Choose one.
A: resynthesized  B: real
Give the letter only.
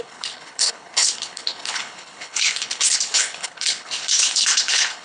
A